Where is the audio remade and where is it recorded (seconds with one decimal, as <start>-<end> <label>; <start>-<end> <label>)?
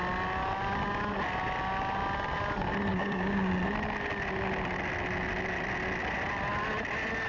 0.0-2.9 recorded; 2.9-3.5 remade; 3.5-7.3 recorded